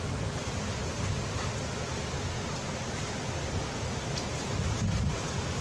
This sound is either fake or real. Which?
real